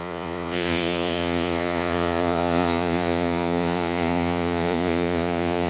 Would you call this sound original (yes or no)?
no